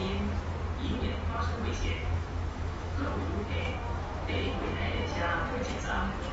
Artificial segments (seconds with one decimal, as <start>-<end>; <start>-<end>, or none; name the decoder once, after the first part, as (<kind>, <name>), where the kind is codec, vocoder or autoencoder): 2.0-5.4 (autoencoder, DAC-VAE)